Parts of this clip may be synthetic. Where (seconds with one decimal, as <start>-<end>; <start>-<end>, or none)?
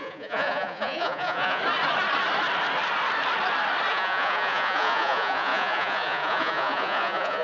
0.0-1.6; 3.9-7.4